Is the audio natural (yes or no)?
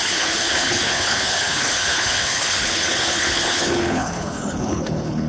no